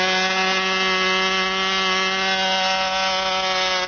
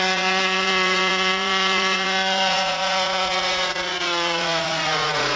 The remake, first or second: second